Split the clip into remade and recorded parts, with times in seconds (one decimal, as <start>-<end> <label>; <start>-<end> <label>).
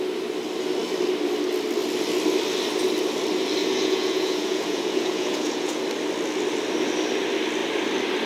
0.0-3.6 recorded; 3.6-5.8 remade; 5.8-8.3 recorded